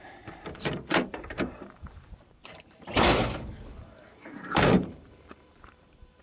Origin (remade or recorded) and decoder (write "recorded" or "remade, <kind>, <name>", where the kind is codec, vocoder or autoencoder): remade, vocoder, BigVGAN v2